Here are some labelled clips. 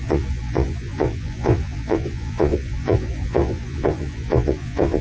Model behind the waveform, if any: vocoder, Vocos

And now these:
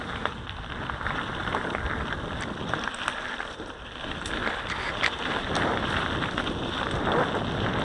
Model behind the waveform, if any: none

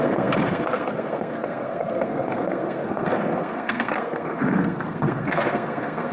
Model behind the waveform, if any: codec, SNAC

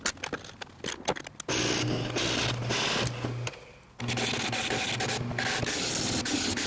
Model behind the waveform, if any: none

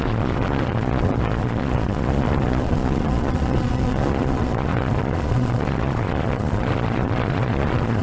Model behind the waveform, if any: vocoder, Vocos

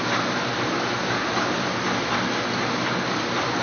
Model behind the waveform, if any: none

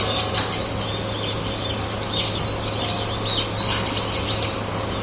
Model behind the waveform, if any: none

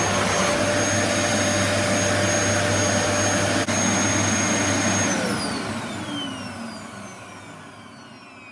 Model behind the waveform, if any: none